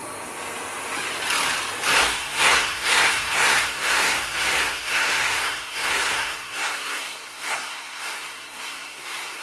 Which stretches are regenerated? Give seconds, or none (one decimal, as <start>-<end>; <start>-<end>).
2.0-9.4